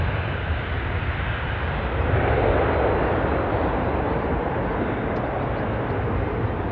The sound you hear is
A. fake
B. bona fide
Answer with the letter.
B